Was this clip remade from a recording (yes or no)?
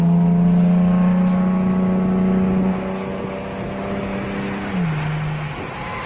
no